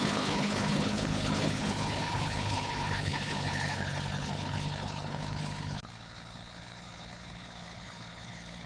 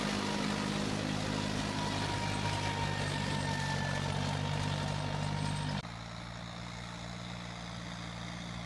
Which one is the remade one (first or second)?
first